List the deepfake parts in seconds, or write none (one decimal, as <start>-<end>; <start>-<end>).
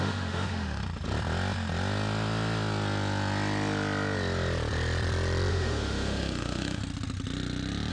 0.0-0.8; 5.5-6.8